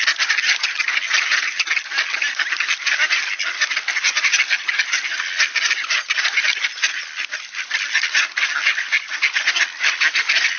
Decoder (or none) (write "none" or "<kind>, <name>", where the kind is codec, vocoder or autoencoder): none